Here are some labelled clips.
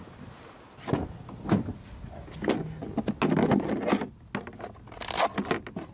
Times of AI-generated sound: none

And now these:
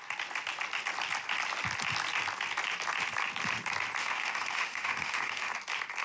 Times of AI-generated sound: 4.0-5.5 (autoencoder, DAC-VAE)